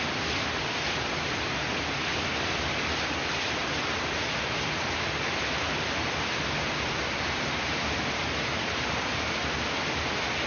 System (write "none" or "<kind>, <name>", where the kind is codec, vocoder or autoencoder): none